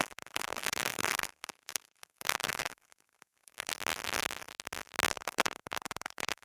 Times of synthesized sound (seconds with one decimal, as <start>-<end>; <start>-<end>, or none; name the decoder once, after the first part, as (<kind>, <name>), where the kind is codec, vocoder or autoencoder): 0.0-3.7 (codec, SNAC); 5.1-6.4